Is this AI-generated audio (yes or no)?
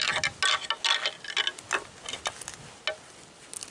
no